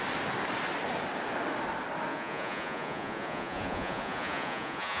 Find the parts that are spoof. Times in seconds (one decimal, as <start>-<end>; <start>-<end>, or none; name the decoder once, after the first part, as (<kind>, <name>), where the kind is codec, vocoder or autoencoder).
2.1-5.0 (vocoder, Vocos)